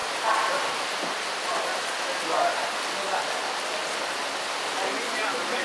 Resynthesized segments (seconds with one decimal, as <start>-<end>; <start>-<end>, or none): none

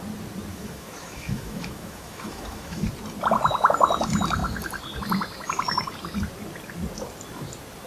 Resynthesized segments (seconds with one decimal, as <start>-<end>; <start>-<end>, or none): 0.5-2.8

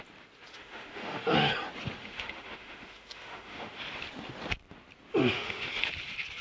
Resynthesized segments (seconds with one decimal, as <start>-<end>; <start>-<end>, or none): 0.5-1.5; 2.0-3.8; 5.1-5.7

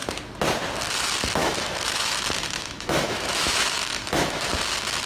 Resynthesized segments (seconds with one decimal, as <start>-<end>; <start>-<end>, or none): 1.4-4.5

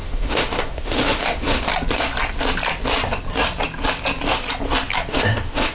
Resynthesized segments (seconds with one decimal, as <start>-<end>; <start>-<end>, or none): 0.0-1.7; 5.1-5.7

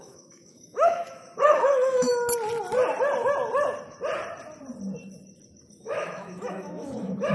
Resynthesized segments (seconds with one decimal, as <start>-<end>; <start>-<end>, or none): 0.0-2.1; 5.8-7.3

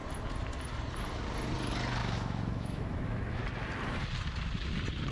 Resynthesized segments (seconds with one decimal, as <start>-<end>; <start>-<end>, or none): 2.0-3.4

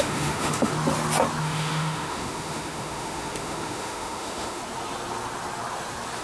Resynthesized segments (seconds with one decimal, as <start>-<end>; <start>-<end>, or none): 0.0-0.7; 1.4-4.6